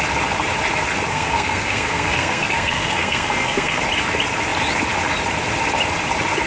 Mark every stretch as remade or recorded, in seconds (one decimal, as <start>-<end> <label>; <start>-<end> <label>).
0.0-1.1 recorded; 1.1-3.8 remade; 3.8-6.5 recorded

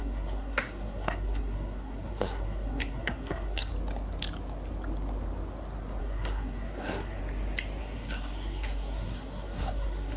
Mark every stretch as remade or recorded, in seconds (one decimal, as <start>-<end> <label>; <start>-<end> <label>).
0.0-3.7 remade; 3.7-6.0 recorded; 6.0-7.2 remade; 7.2-7.8 recorded; 7.8-10.2 remade

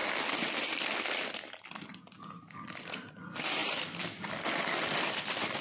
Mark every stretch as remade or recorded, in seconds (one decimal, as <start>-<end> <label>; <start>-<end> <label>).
0.0-5.6 recorded

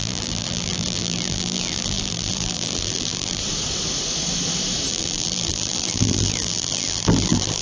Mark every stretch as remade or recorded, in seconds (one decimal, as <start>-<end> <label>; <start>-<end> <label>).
0.0-3.4 remade; 3.4-4.9 recorded; 4.9-7.6 remade

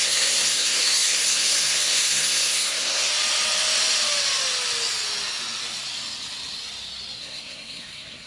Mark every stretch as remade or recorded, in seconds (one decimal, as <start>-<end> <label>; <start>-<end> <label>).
0.0-3.1 remade; 3.1-7.2 recorded; 7.2-8.3 remade